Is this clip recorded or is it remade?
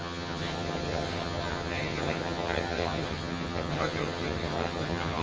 remade